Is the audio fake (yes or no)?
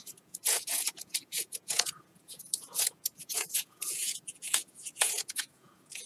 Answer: yes